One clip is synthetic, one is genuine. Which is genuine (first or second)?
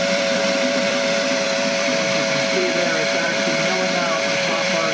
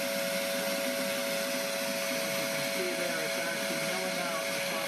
second